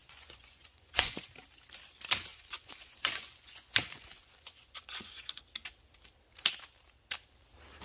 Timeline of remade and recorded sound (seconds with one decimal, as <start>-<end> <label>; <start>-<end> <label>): 0.0-1.3 remade; 1.3-2.3 recorded; 2.3-5.4 remade; 5.4-7.8 recorded